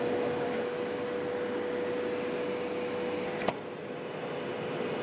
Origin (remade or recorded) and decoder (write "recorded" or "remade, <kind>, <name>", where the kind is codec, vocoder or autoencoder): recorded